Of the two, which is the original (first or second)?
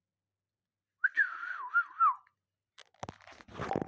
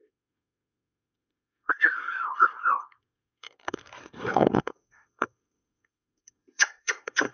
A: first